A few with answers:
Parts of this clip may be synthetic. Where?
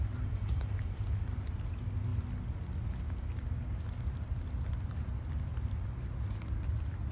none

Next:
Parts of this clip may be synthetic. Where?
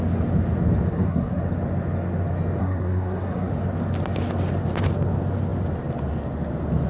0.9-1.4; 2.6-3.5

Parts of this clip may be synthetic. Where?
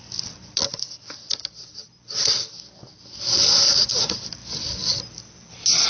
none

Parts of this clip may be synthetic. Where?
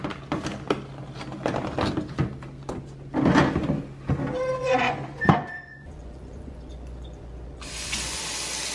4.6-8.2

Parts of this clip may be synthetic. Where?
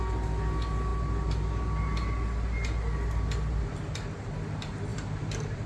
4.9-5.7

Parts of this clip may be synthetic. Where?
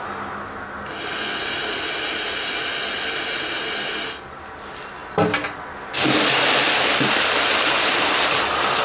none